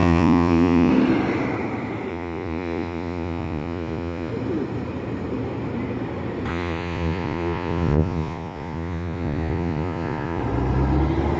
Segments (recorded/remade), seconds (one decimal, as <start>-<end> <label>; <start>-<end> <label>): 0.0-0.9 remade; 0.9-2.1 recorded; 2.1-4.3 remade; 4.3-6.5 recorded; 6.5-10.4 remade; 10.4-11.4 recorded